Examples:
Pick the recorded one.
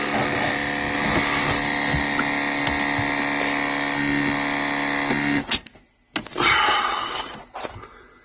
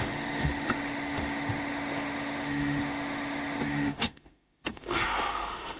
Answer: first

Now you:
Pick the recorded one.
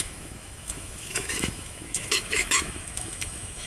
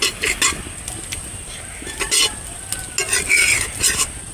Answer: second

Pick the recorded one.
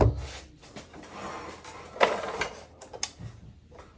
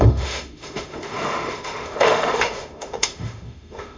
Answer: first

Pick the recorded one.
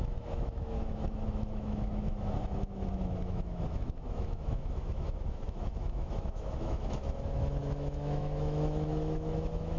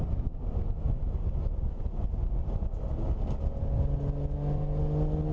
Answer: second